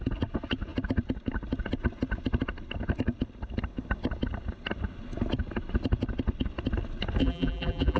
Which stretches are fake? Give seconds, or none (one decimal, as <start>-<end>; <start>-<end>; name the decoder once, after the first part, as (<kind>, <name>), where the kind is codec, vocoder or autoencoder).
7.2-8.0 (vocoder, BigVGAN v2)